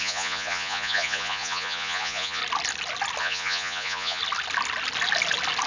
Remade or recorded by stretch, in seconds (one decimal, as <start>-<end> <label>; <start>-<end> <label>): 0.0-2.4 remade; 2.4-3.2 recorded; 3.2-4.2 remade; 4.2-5.7 recorded